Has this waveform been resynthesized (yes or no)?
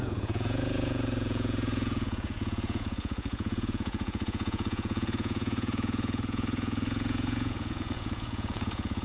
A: yes